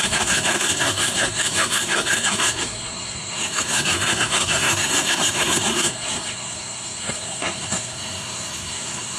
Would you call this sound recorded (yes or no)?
no